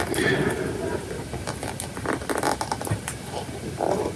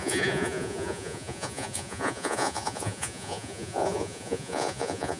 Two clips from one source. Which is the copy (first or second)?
second